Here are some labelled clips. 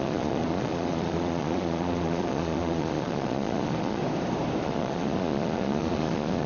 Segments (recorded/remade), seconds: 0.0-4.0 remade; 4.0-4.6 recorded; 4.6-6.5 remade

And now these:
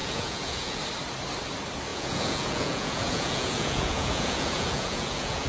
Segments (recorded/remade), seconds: 0.0-0.8 remade; 0.8-1.9 recorded; 1.9-5.5 remade

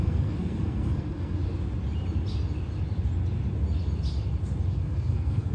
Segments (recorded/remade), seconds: 0.0-1.4 remade; 1.4-4.7 recorded; 4.7-5.5 remade